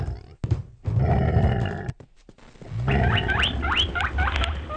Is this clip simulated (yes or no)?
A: no